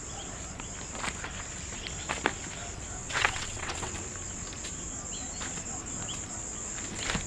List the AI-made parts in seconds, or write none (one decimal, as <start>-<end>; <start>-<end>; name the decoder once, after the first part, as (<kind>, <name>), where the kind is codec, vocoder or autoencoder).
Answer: 3.0-3.9 (vocoder, WaveNeXt)